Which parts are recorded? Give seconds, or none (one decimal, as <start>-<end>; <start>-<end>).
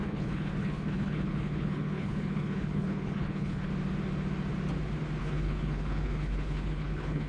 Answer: 3.7-5.2